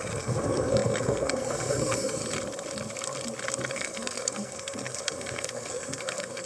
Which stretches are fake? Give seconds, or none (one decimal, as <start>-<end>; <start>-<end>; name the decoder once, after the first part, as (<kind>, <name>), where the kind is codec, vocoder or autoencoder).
0.0-2.2 (codec, SNAC); 3.7-6.5